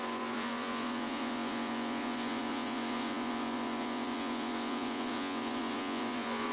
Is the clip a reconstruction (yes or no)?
yes